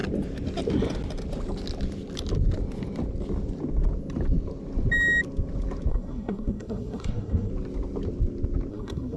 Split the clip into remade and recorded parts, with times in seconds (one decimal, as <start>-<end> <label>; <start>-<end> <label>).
0.0-5.9 recorded; 5.9-7.5 remade; 7.5-8.7 recorded; 8.7-9.2 remade